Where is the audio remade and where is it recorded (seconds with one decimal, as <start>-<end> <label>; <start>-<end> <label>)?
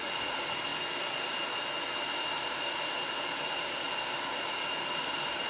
0.0-0.7 remade; 0.7-2.4 recorded; 2.4-5.5 remade